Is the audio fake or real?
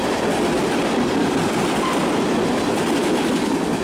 real